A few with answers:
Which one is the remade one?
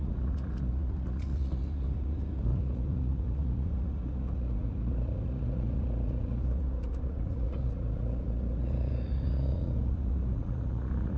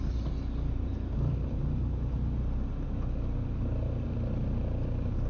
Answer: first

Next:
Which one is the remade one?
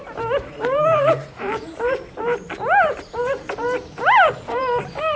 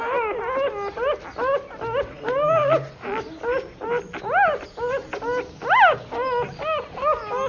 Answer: first